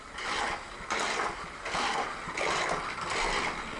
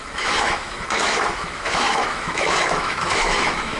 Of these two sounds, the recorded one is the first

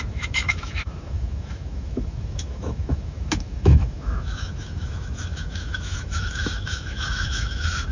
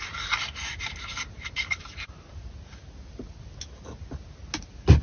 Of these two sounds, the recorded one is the second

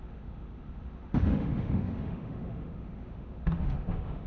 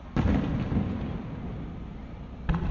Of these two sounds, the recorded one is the second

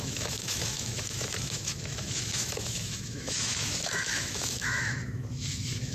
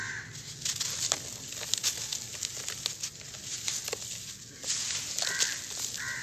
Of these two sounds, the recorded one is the second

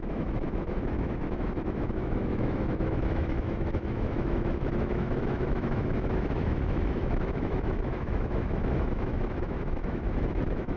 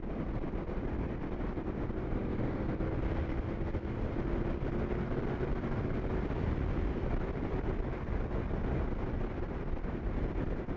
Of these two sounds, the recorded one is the second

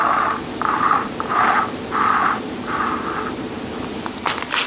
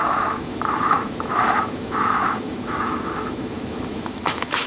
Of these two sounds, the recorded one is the first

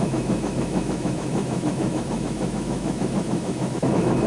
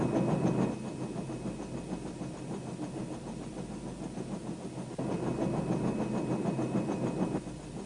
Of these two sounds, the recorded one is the second